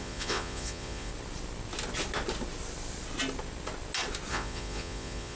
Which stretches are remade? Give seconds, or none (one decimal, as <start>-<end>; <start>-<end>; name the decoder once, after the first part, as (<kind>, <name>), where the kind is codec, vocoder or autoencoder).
0.0-1.1 (vocoder, Vocos); 4.3-5.4